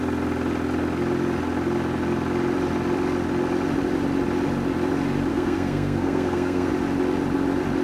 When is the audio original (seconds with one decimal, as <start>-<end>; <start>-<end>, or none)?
0.0-5.3; 6.7-7.8